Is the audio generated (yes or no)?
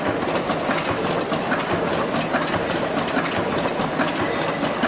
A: no